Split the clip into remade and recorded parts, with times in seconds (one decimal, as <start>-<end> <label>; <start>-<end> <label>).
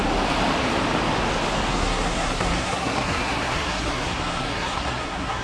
0.0-1.7 recorded; 1.7-5.4 remade